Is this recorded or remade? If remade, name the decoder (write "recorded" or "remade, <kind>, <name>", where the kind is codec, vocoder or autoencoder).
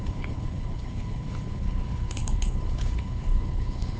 remade, codec, HILCodec